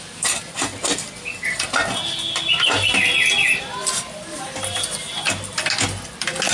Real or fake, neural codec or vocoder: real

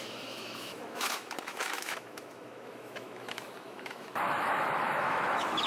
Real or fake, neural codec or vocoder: fake, autoencoder, DAC-VAE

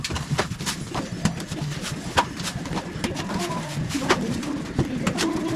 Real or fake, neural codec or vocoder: real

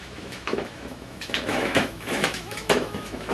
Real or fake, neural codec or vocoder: fake, autoencoder, DAC-VAE